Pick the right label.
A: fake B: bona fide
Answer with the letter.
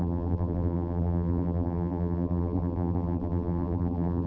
A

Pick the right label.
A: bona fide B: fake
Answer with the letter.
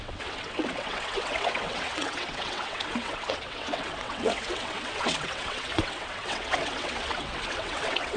B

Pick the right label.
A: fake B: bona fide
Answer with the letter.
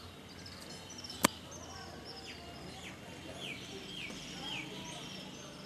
B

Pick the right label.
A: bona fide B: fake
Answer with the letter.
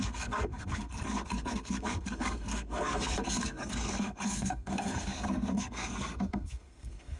B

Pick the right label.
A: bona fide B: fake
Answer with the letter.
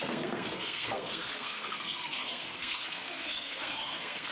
B